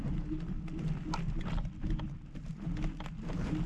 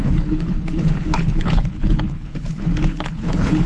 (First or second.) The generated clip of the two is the second